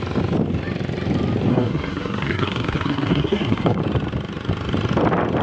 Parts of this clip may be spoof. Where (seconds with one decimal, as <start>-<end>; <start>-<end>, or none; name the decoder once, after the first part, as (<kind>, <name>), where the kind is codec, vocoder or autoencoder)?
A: 1.5-3.8 (codec, SNAC)